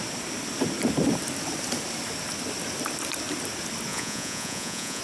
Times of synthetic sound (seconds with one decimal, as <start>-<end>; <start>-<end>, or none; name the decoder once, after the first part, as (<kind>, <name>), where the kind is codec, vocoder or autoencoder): 3.9-5.0 (vocoder, Vocos)